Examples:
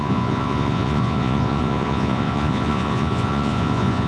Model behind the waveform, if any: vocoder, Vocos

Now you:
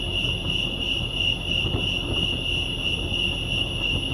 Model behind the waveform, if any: none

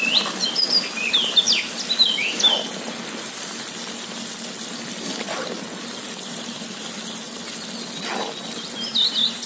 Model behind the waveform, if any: none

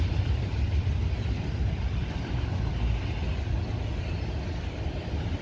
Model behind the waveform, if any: none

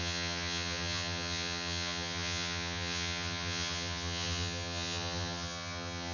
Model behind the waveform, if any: vocoder, HiFi-GAN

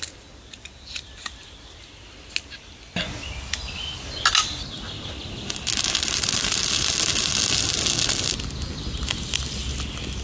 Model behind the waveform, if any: none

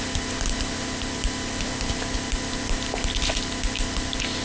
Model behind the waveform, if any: none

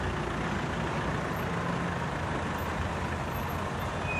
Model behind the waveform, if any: none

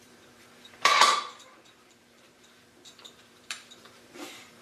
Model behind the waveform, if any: vocoder, BigVGAN v2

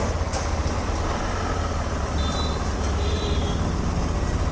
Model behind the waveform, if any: none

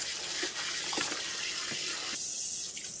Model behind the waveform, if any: none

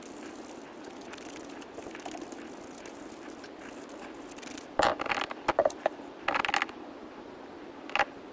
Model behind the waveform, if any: none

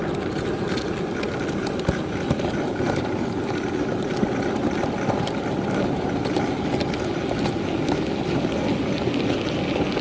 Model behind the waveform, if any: none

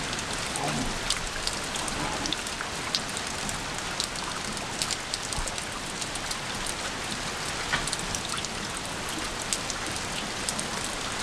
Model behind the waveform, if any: none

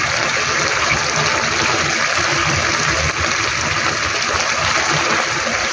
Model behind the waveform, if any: none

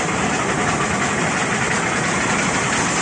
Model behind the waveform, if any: none